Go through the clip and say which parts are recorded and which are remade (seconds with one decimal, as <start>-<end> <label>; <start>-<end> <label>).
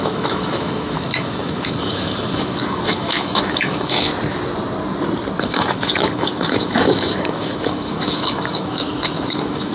0.0-4.1 remade; 4.1-5.4 recorded; 5.4-9.7 remade